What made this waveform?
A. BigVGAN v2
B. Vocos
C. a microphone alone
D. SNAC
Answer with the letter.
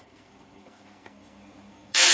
D